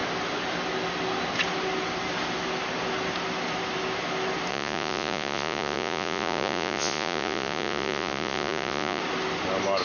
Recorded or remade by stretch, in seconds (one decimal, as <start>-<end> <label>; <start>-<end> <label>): 0.0-4.5 recorded; 4.5-9.0 remade; 9.0-9.8 recorded